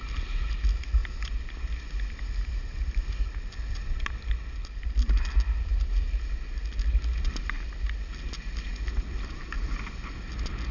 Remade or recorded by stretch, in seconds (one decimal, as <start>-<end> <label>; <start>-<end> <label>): 0.0-10.7 recorded